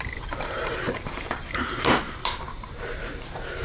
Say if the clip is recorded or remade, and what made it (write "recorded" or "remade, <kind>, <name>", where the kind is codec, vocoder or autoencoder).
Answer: remade, vocoder, BigVGAN v2